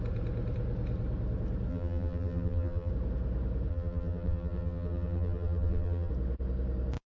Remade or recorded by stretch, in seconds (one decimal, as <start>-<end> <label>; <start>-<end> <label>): 0.0-1.7 recorded; 1.7-2.9 remade; 2.9-3.7 recorded; 3.7-6.1 remade; 6.1-7.1 recorded